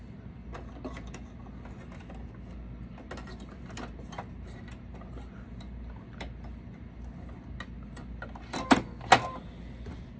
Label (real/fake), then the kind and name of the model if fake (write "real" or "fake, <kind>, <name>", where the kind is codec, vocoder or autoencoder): real